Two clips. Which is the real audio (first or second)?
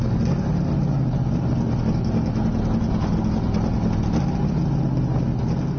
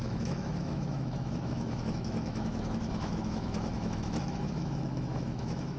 first